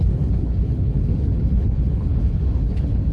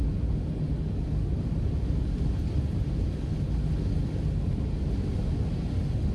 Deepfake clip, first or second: first